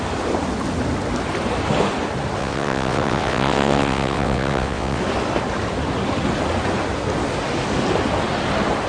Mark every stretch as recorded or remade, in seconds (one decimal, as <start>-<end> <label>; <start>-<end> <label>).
0.0-2.4 recorded; 2.4-5.0 remade; 5.0-8.9 recorded